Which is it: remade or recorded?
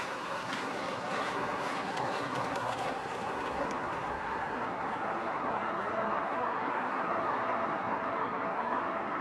remade